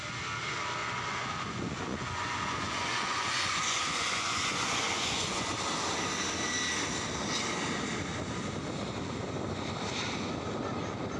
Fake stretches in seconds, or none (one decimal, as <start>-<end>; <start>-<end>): 0.8-5.5